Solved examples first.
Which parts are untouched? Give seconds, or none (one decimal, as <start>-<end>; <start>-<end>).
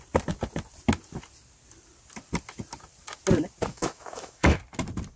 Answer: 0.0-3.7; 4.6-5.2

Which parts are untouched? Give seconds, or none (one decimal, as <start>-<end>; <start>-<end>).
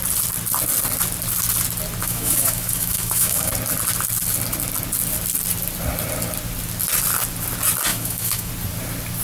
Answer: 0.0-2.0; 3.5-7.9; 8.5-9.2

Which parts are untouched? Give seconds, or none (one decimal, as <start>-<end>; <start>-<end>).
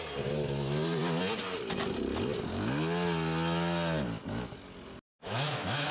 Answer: 0.0-5.2